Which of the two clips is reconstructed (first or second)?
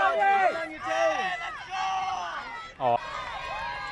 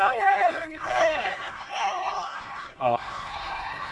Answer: second